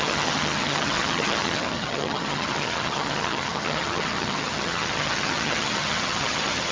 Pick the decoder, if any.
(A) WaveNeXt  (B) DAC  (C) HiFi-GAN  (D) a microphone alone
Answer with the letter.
C